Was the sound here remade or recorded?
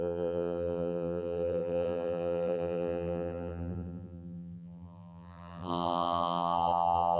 remade